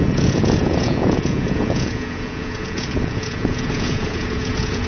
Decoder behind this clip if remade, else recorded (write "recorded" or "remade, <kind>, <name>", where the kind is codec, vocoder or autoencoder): remade, vocoder, Vocos